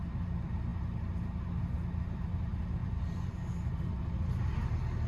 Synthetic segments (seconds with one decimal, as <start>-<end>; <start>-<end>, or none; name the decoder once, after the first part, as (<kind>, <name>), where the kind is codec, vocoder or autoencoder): none